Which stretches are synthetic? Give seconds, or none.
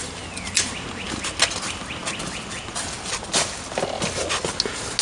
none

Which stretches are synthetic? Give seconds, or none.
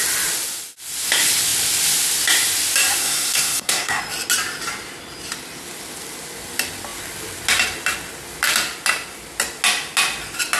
3.0-4.0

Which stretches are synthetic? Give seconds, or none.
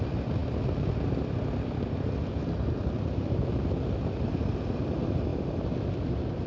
none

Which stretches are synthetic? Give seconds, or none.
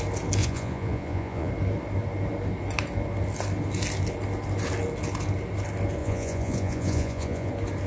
0.4-1.5; 6.0-7.5